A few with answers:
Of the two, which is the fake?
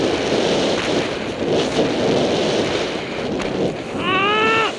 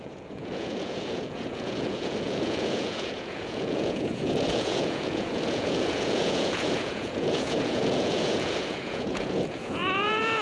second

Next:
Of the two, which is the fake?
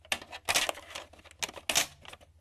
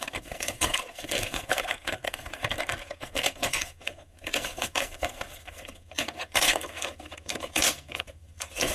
second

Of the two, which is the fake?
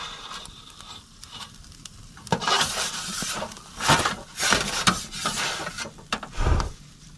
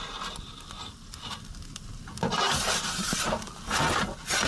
first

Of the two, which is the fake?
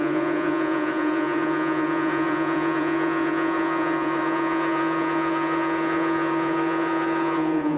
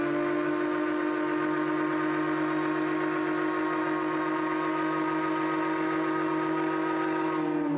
first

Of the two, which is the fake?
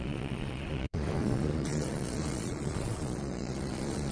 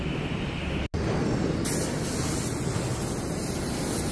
first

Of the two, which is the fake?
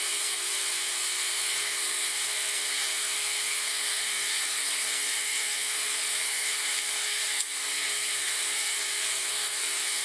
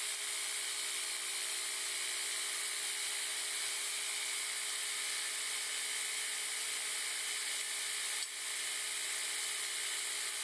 first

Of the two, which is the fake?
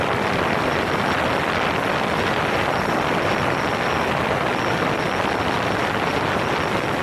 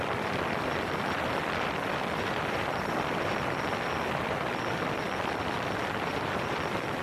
second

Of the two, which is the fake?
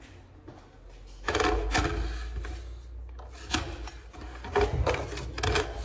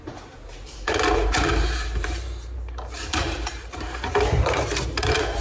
second